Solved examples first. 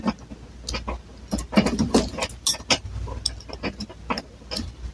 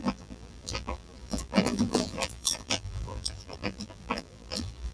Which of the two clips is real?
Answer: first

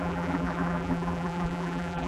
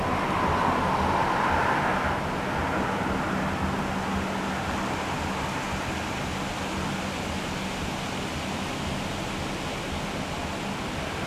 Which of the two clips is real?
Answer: second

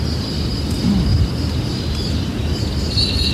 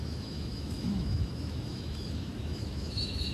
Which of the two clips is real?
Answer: first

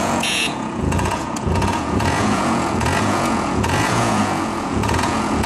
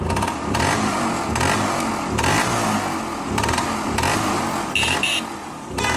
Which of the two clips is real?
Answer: second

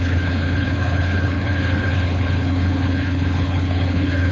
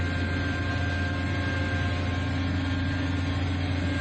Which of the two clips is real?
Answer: second